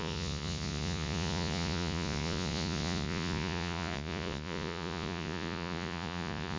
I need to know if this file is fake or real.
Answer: fake